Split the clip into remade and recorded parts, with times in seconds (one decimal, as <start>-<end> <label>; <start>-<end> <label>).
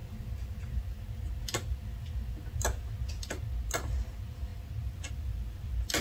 0.0-6.0 recorded